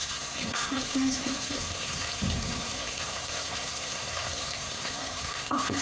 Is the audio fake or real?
fake